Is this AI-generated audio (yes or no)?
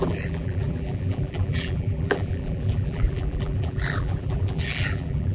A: yes